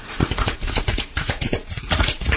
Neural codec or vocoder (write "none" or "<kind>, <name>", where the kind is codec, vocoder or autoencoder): vocoder, Vocos